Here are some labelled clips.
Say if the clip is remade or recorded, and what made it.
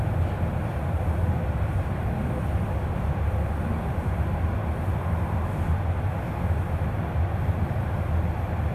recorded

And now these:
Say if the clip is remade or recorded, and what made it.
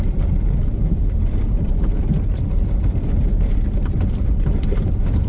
remade, vocoder, BigVGAN v2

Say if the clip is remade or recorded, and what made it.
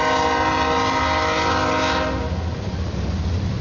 recorded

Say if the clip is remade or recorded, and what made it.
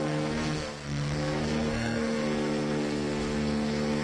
remade, codec, SNAC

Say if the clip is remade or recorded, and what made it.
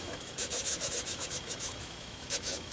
remade, autoencoder, DAC-VAE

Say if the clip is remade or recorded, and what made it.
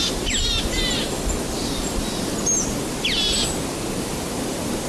recorded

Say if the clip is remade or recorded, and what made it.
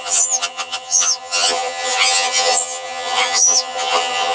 remade, vocoder, HiFi-GAN